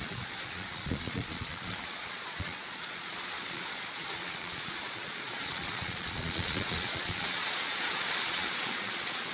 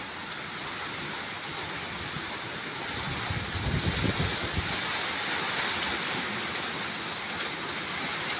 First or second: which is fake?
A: first